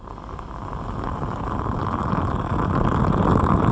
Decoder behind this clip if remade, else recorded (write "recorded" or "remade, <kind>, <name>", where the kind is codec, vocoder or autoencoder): recorded